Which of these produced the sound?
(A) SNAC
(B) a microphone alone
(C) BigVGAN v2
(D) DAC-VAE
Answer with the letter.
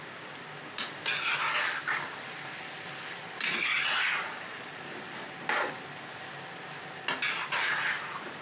B